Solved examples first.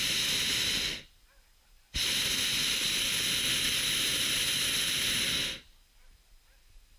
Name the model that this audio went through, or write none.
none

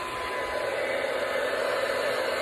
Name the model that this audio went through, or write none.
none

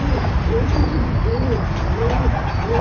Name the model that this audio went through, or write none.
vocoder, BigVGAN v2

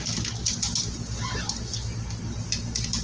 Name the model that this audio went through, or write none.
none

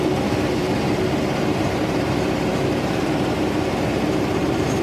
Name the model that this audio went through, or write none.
vocoder, BigVGAN v2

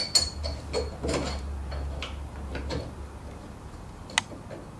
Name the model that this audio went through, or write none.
none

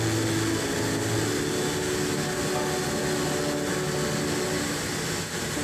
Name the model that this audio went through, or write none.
none